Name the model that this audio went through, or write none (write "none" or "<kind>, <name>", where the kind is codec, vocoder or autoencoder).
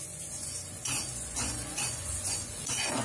vocoder, Vocos